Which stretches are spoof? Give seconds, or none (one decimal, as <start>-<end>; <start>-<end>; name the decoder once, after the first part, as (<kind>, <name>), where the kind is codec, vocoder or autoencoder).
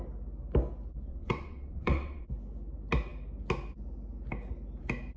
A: 1.1-2.2 (vocoder, WaveNeXt)